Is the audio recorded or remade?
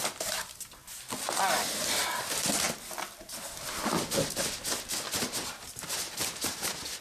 recorded